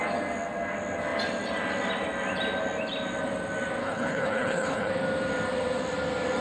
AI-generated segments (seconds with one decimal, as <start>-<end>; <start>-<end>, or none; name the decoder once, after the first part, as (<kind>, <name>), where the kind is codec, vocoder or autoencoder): 3.8-4.9 (codec, HILCodec)